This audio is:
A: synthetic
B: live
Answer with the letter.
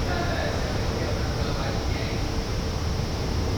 B